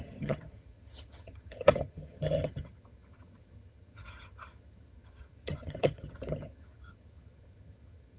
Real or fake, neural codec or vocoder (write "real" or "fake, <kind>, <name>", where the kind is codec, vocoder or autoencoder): fake, vocoder, HiFi-GAN